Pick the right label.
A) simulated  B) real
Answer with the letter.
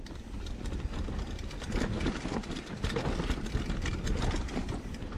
B